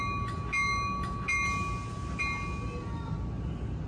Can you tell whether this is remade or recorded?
recorded